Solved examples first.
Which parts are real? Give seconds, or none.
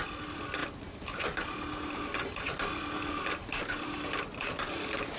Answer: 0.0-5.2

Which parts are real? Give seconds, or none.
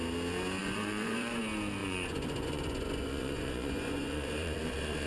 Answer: 0.0-0.6; 1.4-1.8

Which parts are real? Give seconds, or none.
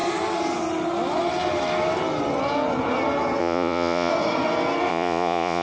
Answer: 0.0-3.4; 4.1-4.9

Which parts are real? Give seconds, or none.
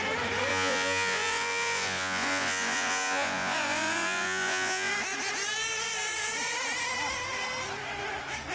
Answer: 0.0-0.5; 4.9-8.5